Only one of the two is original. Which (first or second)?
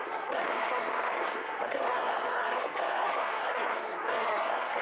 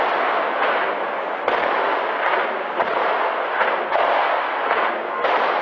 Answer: second